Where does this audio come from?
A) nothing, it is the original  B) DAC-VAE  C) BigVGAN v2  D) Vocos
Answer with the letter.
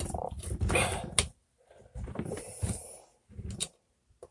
A